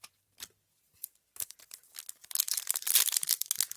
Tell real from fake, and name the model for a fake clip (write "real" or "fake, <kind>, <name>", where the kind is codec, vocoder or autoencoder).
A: fake, vocoder, BigVGAN v2